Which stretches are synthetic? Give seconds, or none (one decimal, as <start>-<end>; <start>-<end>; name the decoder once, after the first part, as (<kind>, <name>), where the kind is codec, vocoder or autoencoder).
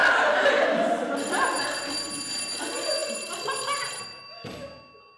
0.0-2.1 (vocoder, BigVGAN v2); 3.0-5.2